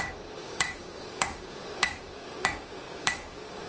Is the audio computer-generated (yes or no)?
yes